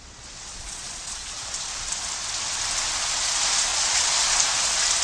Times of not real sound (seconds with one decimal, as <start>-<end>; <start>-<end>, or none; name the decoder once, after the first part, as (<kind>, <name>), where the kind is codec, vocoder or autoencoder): 0.5-1.5 (vocoder, Vocos); 3.7-4.2